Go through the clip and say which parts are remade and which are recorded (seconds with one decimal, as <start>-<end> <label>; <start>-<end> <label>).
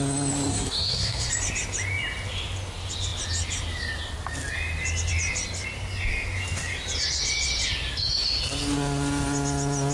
0.0-0.5 recorded; 0.5-1.3 remade; 1.3-9.9 recorded